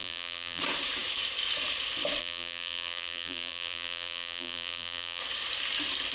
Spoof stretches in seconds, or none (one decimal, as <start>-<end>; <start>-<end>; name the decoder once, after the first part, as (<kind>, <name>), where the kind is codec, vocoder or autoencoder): 0.0-0.6 (vocoder, BigVGAN v2); 2.2-5.2